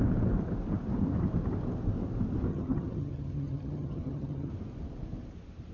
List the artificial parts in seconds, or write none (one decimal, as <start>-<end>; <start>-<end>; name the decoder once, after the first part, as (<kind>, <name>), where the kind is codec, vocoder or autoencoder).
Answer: 2.5-4.5 (vocoder, HiFi-GAN)